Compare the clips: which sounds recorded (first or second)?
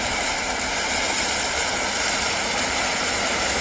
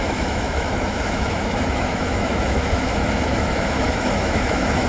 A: first